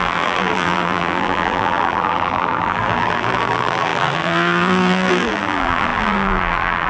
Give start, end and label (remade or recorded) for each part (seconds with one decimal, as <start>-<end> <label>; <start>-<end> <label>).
0.0-6.9 remade